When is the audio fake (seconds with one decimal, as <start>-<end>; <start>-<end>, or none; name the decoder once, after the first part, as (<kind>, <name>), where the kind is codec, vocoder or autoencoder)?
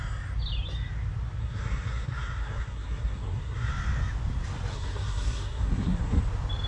1.4-3.7 (codec, SNAC); 4.7-6.2